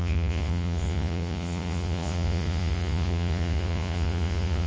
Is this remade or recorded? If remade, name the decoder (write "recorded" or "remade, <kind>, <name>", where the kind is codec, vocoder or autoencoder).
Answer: remade, vocoder, Vocos